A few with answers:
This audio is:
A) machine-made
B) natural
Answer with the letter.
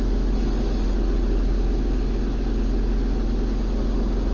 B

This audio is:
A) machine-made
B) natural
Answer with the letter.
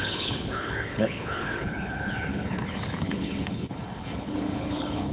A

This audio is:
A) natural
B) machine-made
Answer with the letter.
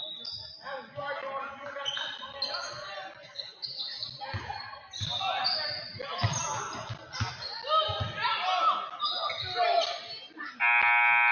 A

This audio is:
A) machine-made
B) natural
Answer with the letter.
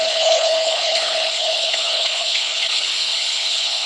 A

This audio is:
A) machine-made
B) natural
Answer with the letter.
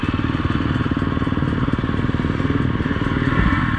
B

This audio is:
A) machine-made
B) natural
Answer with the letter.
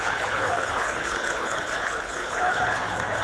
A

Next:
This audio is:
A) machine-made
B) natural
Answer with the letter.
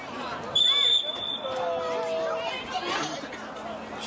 B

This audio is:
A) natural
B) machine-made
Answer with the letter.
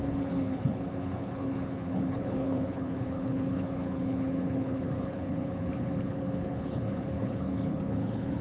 B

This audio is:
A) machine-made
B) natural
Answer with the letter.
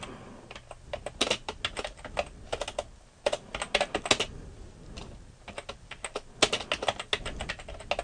B